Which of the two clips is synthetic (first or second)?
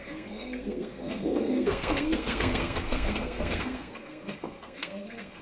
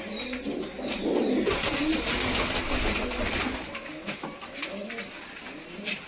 first